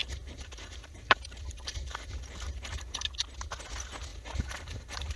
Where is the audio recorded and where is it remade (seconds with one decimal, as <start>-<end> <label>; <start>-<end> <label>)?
0.0-3.1 remade; 3.1-4.1 recorded; 4.1-5.2 remade